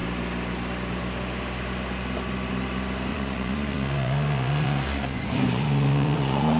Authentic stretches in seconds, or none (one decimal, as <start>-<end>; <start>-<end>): 0.0-3.1